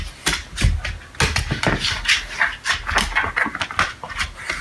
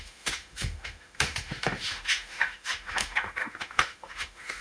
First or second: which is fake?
second